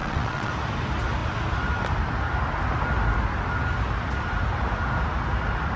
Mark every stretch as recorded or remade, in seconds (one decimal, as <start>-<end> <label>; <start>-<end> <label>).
0.0-0.5 remade; 0.5-5.8 recorded